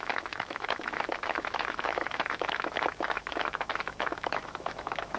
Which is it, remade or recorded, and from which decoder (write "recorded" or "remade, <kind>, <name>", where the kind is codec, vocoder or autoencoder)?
remade, autoencoder, DAC-VAE